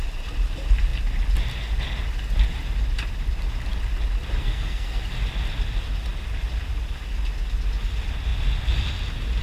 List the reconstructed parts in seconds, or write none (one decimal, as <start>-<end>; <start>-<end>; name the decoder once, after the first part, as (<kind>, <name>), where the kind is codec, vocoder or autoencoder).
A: 4.4-5.0 (codec, SNAC)